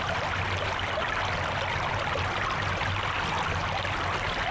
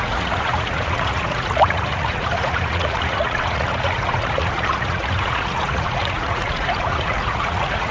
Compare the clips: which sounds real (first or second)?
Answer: first